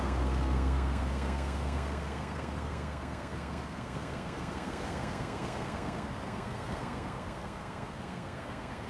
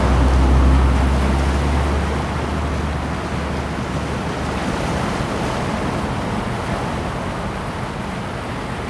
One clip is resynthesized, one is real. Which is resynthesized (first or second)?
first